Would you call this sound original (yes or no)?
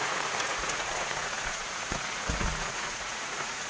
no